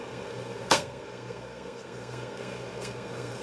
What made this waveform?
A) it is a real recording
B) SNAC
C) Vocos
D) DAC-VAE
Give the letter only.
B